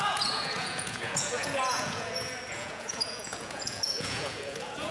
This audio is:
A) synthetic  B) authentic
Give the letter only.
A